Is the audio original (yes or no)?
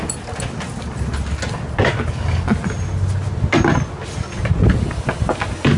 yes